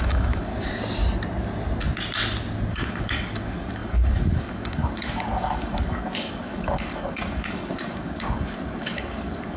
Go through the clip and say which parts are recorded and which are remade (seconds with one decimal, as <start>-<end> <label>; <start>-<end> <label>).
0.0-0.5 remade; 0.5-2.7 recorded; 2.7-9.6 remade